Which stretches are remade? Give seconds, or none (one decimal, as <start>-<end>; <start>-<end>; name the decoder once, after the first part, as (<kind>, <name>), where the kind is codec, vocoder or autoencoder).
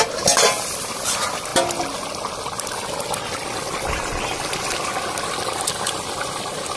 none